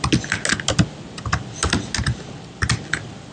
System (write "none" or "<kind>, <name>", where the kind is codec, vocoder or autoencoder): none